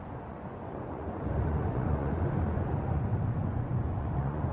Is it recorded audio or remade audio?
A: remade